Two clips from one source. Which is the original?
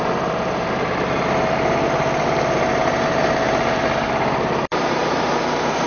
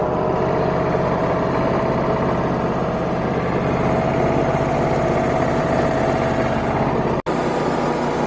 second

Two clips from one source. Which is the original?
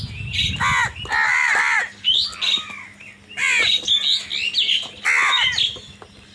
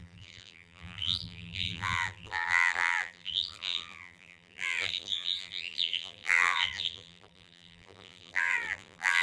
first